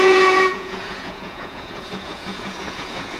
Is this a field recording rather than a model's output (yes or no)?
no